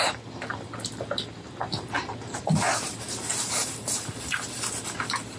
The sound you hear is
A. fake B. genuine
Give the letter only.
B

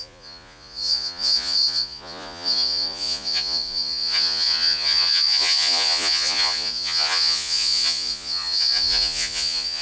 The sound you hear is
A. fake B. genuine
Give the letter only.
A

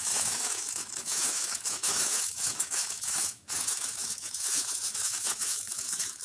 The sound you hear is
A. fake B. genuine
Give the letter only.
A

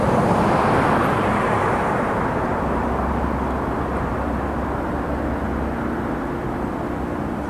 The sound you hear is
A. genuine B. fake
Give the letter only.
A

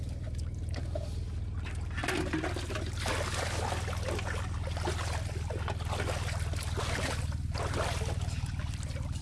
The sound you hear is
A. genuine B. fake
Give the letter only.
A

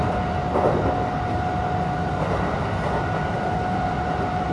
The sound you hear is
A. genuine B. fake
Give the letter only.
A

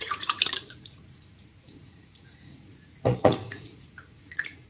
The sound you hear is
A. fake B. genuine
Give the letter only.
A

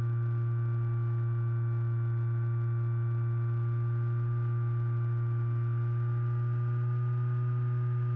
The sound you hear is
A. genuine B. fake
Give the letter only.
A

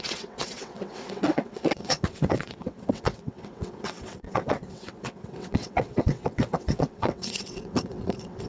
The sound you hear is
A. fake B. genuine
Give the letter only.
A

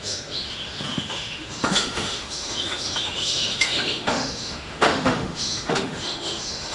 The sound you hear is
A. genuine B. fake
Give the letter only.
B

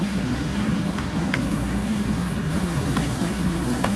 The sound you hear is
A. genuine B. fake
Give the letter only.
B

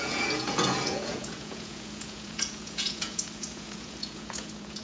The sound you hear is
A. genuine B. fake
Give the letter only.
B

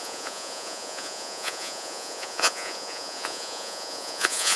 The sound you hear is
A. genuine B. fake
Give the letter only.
B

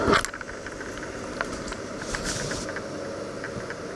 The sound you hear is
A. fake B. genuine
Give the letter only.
B